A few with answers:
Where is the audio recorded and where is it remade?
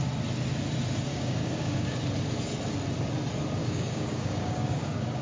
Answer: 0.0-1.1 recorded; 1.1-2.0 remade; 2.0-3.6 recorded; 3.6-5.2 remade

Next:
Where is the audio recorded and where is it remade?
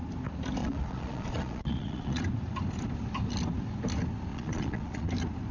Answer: 0.0-0.6 recorded; 0.6-2.2 remade; 2.2-4.3 recorded; 4.3-5.1 remade; 5.1-5.5 recorded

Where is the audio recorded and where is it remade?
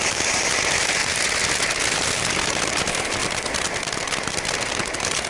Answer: 0.0-1.0 remade; 1.0-1.9 recorded; 1.9-3.2 remade; 3.2-4.7 recorded; 4.7-5.3 remade